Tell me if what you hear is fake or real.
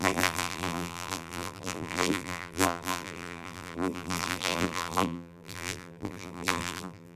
fake